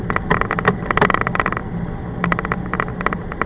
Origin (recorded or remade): recorded